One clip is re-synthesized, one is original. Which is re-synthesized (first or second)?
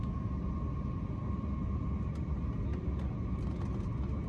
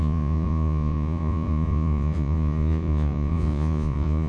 second